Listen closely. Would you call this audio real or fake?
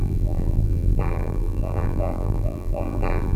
fake